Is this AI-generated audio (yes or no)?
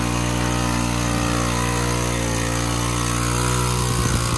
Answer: no